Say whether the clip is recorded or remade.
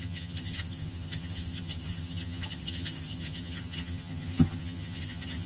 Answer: remade